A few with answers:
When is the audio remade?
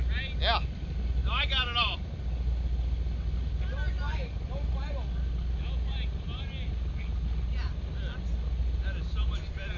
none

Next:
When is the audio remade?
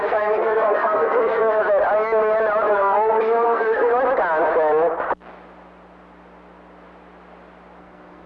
0.0-1.6 (codec, SNAC); 2.7-3.9; 7.8-8.3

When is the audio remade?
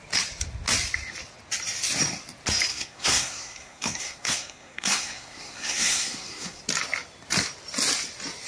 2.7-6.6 (codec, SNAC)